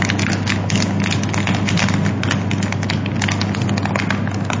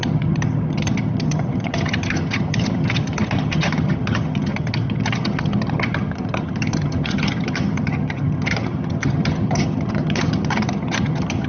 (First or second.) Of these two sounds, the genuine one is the first